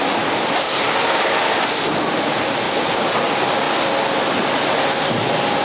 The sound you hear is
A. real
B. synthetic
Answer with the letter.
A